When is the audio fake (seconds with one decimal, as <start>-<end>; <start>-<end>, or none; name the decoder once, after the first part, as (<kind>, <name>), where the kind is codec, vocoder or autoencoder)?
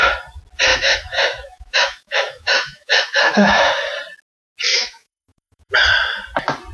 0.7-3.7 (autoencoder, DAC-VAE); 4.7-5.7